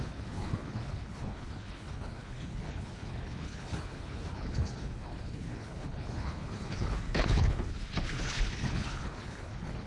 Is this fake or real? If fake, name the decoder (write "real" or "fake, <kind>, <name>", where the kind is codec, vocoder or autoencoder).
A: fake, codec, HILCodec